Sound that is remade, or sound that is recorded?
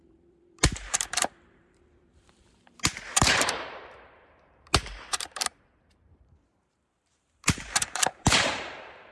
remade